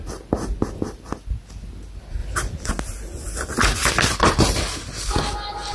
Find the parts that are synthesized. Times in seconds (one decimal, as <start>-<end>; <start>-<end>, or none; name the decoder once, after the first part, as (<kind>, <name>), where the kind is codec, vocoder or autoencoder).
none